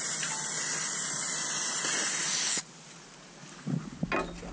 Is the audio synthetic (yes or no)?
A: no